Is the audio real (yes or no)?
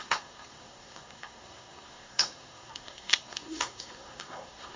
no